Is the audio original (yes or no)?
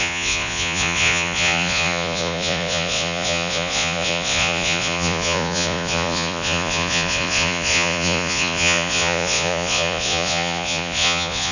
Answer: no